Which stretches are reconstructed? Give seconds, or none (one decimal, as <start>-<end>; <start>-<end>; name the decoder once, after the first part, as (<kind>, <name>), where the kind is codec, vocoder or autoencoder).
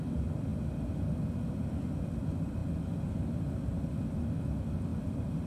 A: 0.0-0.5 (vocoder, BigVGAN v2); 2.0-2.6; 4.1-5.5